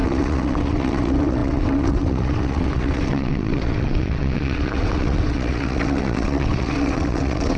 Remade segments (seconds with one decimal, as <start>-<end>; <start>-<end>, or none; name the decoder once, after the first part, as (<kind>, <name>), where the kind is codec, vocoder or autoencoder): 0.0-7.6 (vocoder, WaveNeXt)